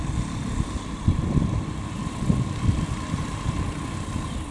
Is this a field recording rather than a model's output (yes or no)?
yes